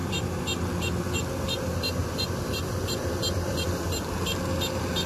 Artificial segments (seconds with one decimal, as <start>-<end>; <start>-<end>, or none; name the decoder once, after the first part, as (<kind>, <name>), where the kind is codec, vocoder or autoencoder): 2.0-4.2 (vocoder, BigVGAN v2)

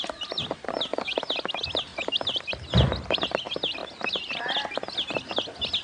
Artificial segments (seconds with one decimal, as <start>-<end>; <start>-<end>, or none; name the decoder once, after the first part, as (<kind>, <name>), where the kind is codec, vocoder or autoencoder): 1.9-3.4 (vocoder, BigVGAN v2); 3.8-4.4